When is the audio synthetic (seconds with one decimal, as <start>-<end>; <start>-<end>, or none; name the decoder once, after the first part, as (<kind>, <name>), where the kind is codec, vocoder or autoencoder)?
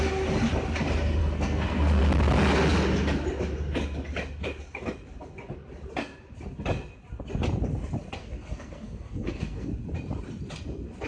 1.2-2.0 (codec, SNAC); 8.2-9.7